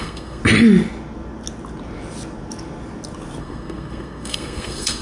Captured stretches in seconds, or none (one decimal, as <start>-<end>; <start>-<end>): 0.4-3.4